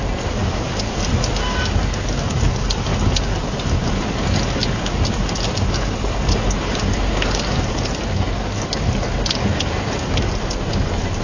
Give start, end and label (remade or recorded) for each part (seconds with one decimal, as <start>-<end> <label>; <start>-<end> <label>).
0.0-11.2 recorded